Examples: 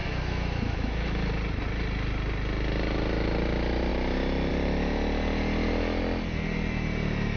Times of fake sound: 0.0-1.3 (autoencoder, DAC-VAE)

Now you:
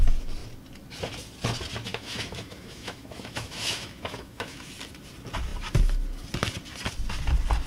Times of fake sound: 1.9-4.7 (autoencoder, DAC-VAE)

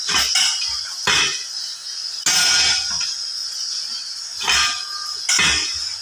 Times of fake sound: none

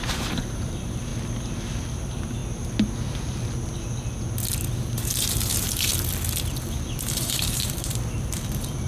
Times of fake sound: 0.0-1.1 (vocoder, BigVGAN v2); 1.8-2.4; 4.7-5.9; 6.6-8.9

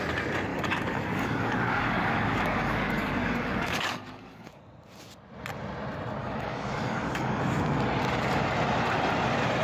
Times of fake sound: 0.5-4.6 (codec, DAC); 6.2-7.4